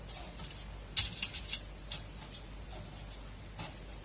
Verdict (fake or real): real